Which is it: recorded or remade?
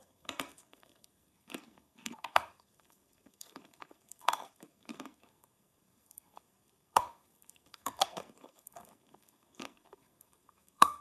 remade